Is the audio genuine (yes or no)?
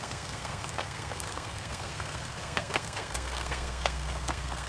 no